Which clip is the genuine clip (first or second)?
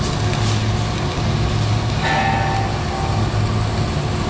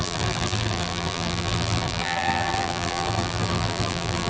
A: first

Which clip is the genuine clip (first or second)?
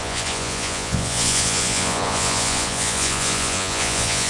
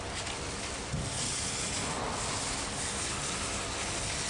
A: second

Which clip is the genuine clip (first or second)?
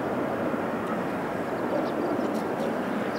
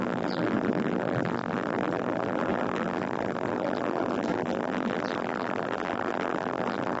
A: first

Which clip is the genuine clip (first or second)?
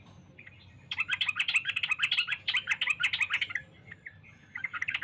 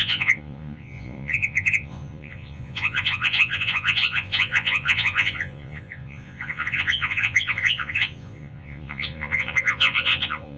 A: first